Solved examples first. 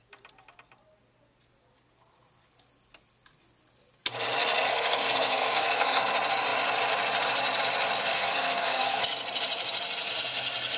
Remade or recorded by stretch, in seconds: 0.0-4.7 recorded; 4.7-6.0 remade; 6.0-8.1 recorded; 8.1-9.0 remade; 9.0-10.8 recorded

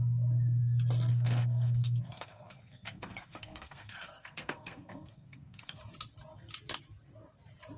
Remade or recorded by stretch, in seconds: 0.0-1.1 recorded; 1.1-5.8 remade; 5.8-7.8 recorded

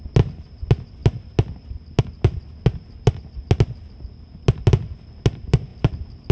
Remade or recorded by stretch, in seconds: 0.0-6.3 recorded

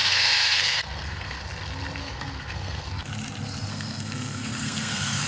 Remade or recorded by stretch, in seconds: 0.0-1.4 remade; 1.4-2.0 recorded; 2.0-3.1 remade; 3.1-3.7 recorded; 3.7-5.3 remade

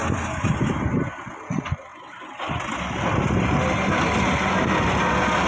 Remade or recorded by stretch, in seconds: 0.0-5.5 recorded

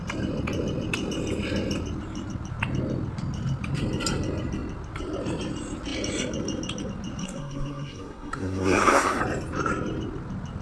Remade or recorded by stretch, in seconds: 0.0-7.2 recorded; 7.2-9.2 remade; 9.2-10.6 recorded

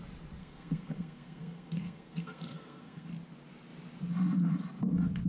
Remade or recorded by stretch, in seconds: 0.0-0.4 recorded; 0.4-3.1 remade; 3.1-5.3 recorded